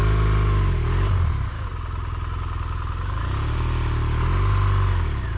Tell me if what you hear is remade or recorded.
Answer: recorded